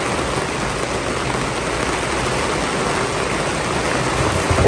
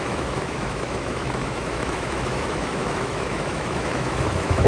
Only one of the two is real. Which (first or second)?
first